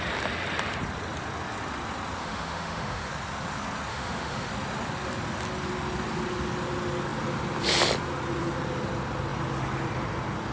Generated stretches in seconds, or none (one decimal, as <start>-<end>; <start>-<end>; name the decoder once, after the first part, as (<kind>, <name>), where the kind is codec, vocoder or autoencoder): 2.2-3.1 (autoencoder, DAC-VAE); 3.9-4.5